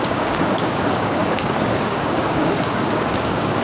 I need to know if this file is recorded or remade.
remade